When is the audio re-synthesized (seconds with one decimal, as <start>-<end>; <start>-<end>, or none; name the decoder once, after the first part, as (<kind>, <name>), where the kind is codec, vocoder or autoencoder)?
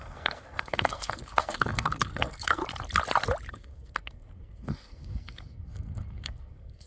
0.0-2.6 (codec, SNAC); 3.5-6.9